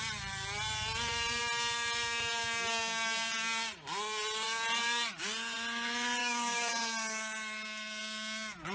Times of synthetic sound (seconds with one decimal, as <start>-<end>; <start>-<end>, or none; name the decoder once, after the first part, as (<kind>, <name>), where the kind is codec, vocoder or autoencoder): 6.2-6.7 (codec, DAC)